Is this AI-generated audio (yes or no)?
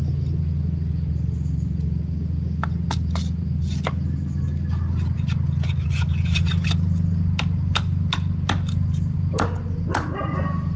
no